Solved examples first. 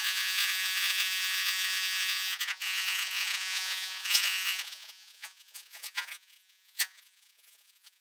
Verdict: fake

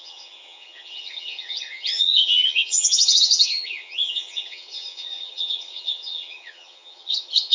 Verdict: fake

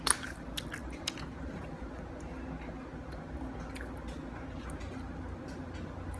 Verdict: real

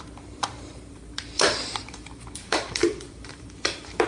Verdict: fake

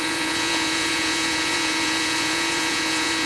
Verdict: fake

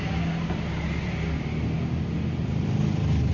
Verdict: real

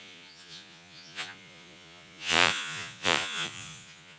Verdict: fake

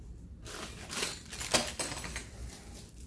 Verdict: real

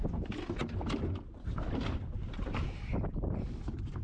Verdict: real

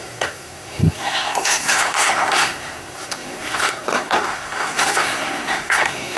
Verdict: fake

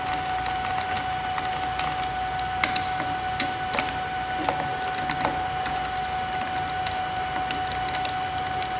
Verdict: real